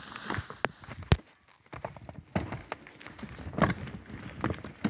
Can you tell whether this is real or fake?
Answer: real